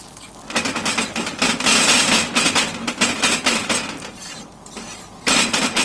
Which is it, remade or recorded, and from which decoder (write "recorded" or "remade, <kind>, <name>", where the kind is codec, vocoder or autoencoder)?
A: recorded